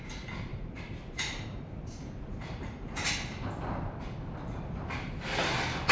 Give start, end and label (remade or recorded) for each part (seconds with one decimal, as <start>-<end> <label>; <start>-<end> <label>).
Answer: 0.0-0.5 recorded; 0.5-3.1 remade; 3.1-5.9 recorded